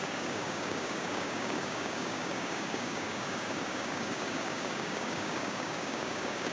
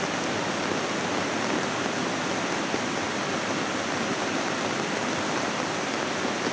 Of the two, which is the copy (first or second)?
first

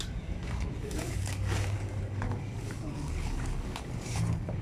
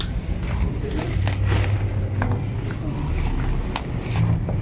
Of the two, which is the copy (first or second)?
first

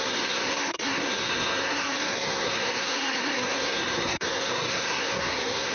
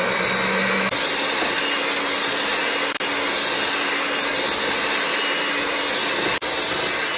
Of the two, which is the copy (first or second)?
first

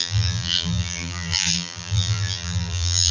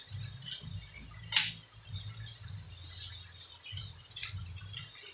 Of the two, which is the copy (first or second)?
first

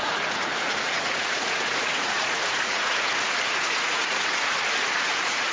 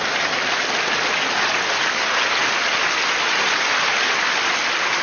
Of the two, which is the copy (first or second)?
first